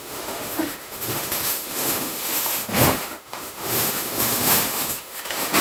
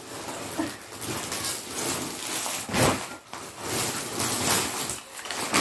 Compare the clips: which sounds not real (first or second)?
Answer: first